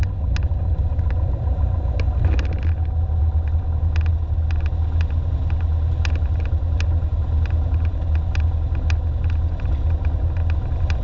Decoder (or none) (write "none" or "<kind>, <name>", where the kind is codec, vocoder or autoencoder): none